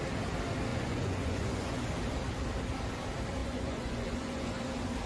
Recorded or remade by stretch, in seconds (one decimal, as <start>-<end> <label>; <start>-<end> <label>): 0.0-0.7 recorded; 0.7-1.9 remade; 1.9-3.4 recorded; 3.4-4.6 remade; 4.6-5.1 recorded